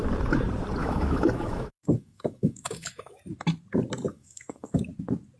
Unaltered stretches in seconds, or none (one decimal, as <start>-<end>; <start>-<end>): 0.0-0.8; 3.2-4.1; 4.8-5.4